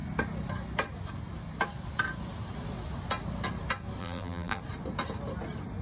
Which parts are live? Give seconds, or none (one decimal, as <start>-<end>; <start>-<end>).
0.0-4.0; 4.6-5.8